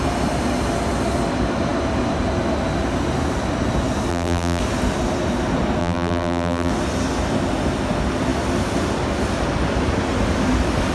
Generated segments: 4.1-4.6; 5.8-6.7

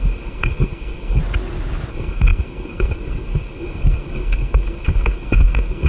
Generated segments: 0.0-1.2; 1.9-5.9

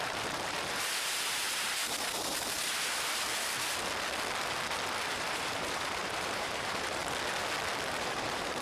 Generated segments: 0.0-1.8; 5.1-7.0; 8.0-8.6

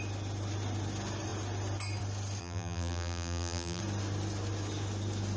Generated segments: 2.4-3.8

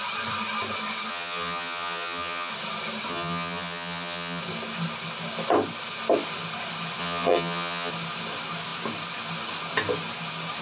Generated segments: 1.1-2.5; 3.1-4.4; 7.0-7.9